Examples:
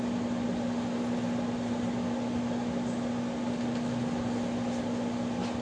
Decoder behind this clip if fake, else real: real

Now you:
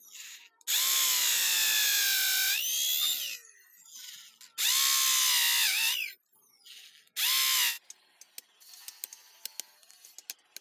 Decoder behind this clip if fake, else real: real